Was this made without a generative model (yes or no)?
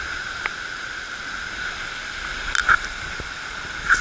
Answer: yes